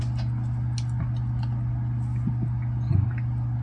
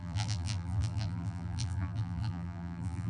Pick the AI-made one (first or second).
second